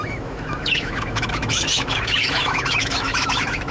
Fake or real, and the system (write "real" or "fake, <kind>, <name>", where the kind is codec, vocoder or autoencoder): fake, autoencoder, DAC-VAE